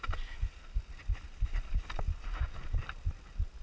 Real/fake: real